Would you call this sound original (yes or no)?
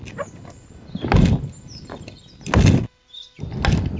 yes